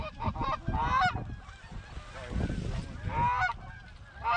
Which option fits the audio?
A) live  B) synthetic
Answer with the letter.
A